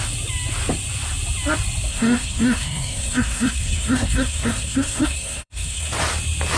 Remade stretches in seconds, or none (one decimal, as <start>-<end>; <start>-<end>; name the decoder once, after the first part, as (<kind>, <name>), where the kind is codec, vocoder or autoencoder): 1.9-5.9 (codec, SNAC)